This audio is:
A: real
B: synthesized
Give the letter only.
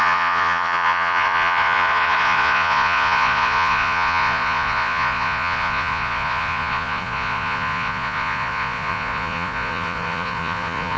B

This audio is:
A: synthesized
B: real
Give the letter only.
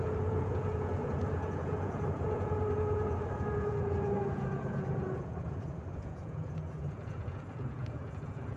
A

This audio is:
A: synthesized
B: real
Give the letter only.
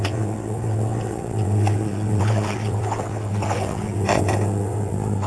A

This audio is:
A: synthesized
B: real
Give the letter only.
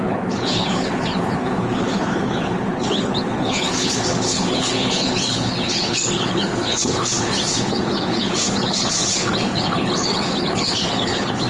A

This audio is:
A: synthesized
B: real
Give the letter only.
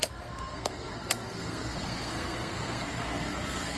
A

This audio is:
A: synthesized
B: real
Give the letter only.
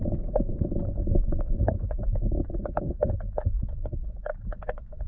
A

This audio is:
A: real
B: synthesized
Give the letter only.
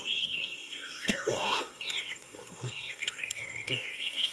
B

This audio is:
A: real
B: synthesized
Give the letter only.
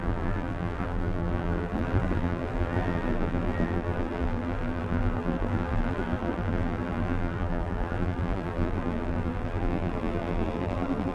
B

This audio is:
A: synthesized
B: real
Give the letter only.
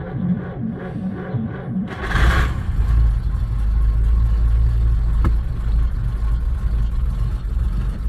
B